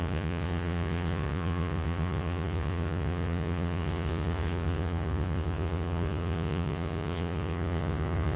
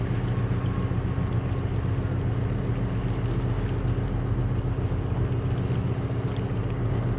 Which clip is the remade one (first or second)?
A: first